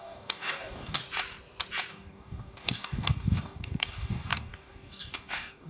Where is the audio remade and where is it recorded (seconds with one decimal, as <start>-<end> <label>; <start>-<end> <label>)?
0.0-1.0 remade; 1.0-1.9 recorded; 1.9-5.7 remade